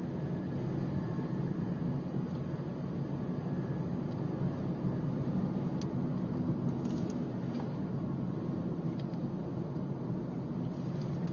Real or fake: real